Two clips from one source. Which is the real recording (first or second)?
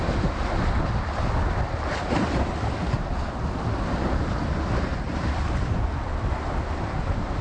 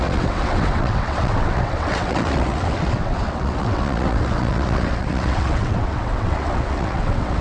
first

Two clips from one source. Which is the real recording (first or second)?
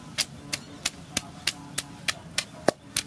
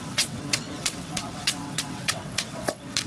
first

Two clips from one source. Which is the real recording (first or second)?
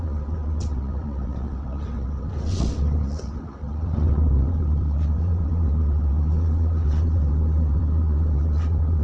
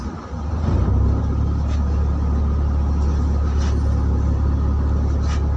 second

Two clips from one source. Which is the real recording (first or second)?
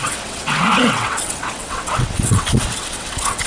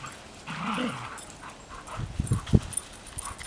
second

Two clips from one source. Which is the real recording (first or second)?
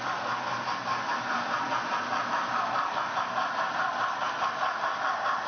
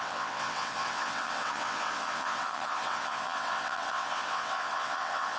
first